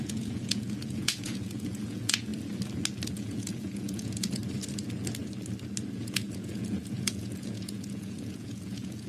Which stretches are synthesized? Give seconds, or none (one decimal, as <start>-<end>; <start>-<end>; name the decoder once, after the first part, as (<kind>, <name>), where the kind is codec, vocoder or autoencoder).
0.0-2.3 (vocoder, Vocos); 3.1-4.4; 5.9-9.1